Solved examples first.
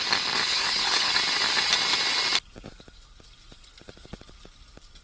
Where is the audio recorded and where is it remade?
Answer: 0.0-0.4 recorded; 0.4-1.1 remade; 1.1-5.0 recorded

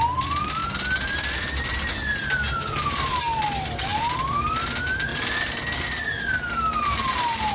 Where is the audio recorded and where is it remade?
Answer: 0.0-0.6 remade; 0.6-3.2 recorded; 3.2-5.1 remade; 5.1-7.5 recorded

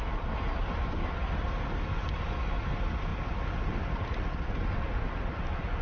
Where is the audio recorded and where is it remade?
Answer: 0.0-5.8 recorded